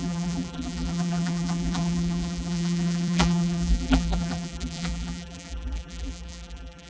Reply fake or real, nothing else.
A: fake